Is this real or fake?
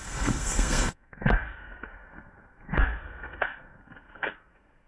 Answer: fake